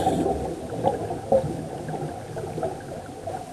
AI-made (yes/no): no